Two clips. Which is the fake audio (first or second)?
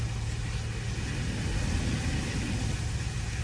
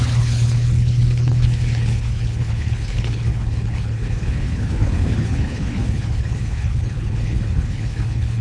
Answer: second